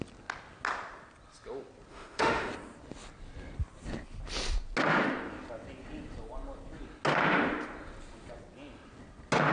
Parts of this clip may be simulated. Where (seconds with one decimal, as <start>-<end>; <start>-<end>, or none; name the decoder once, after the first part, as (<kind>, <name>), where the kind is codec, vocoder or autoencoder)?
1.9-2.5 (autoencoder, DAC-VAE)